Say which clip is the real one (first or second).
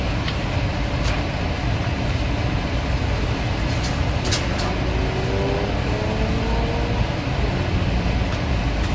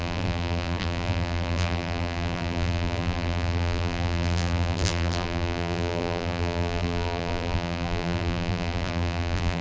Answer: first